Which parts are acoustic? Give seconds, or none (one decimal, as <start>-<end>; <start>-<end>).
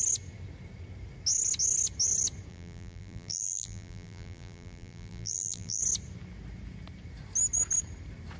0.0-2.5; 5.8-8.4